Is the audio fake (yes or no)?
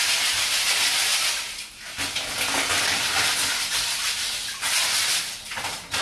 no